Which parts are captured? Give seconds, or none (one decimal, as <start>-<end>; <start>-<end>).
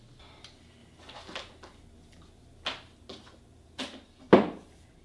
0.0-5.0